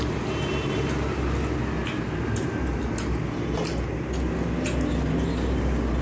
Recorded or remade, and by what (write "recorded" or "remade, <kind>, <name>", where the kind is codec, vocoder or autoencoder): recorded